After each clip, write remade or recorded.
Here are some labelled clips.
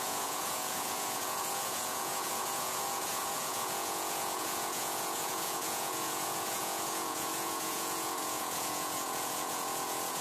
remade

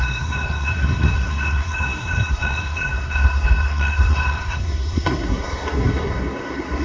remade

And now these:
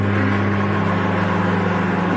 recorded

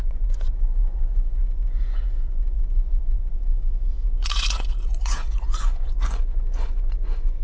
remade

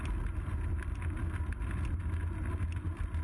recorded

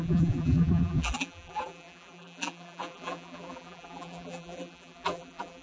remade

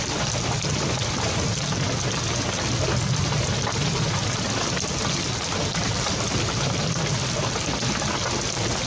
recorded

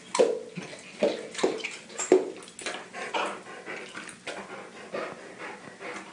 recorded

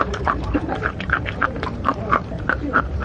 remade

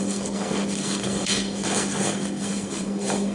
remade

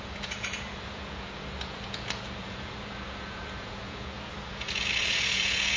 remade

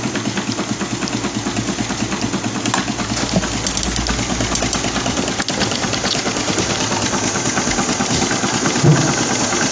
recorded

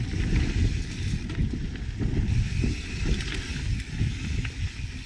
recorded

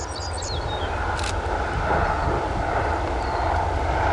recorded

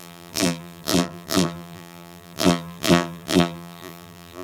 remade